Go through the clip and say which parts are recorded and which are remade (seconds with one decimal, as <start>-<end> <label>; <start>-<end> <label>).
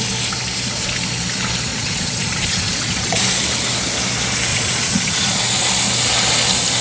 0.0-1.7 recorded; 1.7-3.2 remade; 3.2-4.5 recorded; 4.5-5.4 remade; 5.4-6.8 recorded